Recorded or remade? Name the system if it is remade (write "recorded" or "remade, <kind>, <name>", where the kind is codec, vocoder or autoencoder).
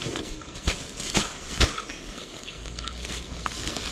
remade, codec, SNAC